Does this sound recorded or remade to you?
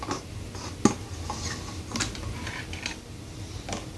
recorded